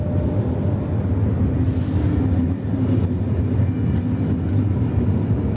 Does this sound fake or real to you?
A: real